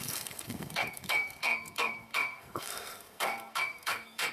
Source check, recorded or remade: remade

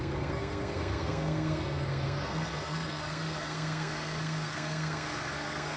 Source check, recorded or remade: remade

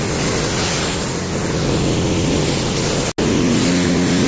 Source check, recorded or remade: recorded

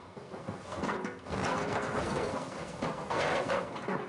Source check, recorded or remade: remade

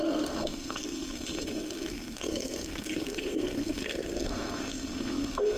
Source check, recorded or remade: remade